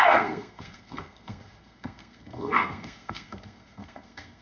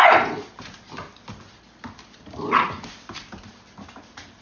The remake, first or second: first